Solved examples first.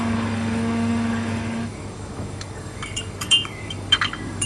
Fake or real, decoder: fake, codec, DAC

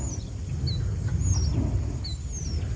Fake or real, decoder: real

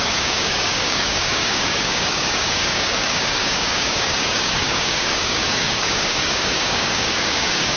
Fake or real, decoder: fake, codec, DAC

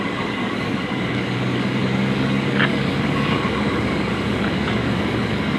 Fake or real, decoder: fake, codec, DAC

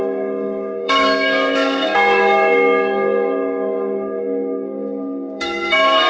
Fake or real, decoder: fake, codec, DAC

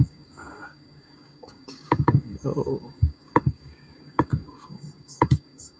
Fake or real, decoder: fake, codec, DAC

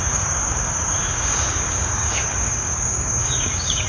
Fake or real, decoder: fake, codec, DAC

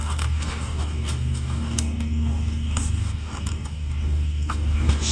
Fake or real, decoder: fake, codec, DAC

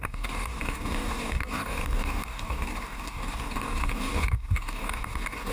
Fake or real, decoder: fake, codec, DAC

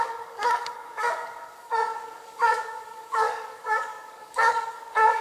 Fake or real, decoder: fake, codec, DAC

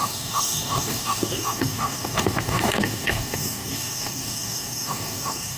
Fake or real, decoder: fake, codec, DAC